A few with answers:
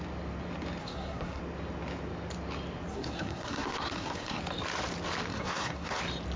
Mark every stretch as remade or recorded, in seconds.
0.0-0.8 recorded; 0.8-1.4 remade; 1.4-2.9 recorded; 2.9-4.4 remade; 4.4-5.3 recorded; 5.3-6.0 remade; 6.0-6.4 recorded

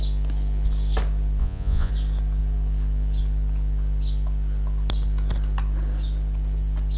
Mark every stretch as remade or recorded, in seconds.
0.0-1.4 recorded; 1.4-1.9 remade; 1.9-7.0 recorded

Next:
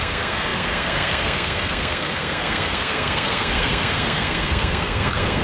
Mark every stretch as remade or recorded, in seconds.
0.0-5.4 remade

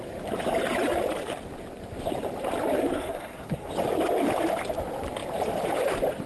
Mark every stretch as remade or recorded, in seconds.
0.0-2.8 recorded; 2.8-3.7 remade; 3.7-6.3 recorded

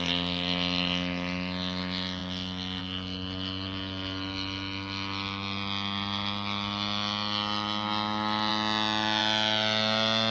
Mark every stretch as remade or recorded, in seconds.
0.0-10.3 recorded